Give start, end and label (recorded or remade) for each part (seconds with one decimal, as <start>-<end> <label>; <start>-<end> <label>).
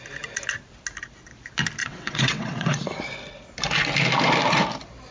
0.0-1.8 recorded; 1.8-2.8 remade; 2.8-5.1 recorded